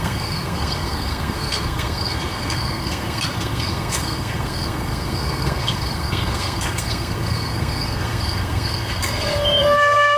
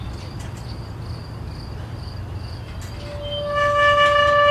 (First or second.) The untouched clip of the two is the second